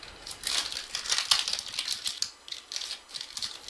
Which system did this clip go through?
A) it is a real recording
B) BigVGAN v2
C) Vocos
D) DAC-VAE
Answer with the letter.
A